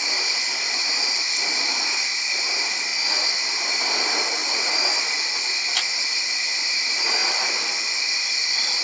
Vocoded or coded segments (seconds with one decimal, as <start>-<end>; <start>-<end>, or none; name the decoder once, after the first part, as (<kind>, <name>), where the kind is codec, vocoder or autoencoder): 0.0-2.9 (vocoder, BigVGAN v2); 3.6-4.4; 5.0-8.8